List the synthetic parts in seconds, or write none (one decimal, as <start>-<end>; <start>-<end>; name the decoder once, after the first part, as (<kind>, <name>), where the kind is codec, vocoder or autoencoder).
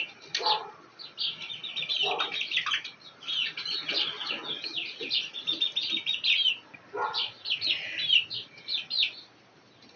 none